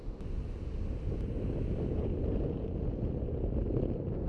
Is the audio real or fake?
real